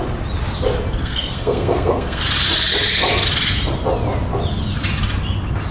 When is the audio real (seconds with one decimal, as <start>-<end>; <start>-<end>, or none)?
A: 0.0-1.0; 2.2-5.7